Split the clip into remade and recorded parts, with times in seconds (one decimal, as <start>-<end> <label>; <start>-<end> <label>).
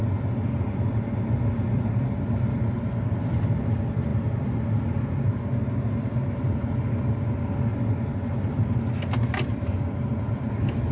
0.0-10.9 recorded